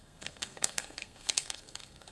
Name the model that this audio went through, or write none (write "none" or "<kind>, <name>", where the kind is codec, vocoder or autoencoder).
codec, SNAC